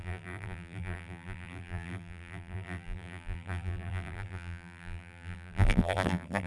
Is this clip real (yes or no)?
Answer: no